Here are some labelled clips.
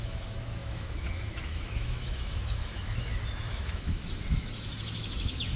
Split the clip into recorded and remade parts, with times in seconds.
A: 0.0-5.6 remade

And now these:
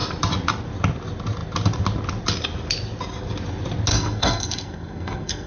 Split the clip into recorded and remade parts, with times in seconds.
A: 0.0-3.9 recorded; 3.9-5.5 remade